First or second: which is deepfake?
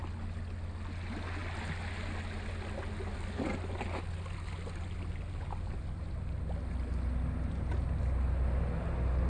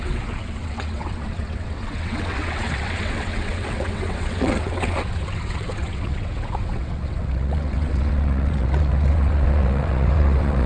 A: second